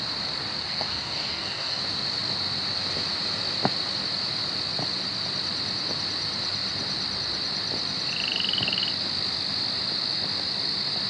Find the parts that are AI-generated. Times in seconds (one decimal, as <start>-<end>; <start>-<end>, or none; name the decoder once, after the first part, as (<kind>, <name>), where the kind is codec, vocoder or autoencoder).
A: 0.6-1.8 (codec, SNAC)